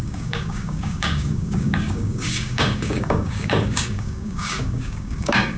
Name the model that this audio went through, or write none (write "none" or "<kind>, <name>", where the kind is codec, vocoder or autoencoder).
codec, DAC